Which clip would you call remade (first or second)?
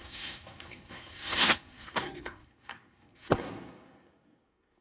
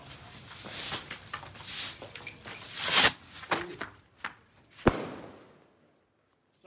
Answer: first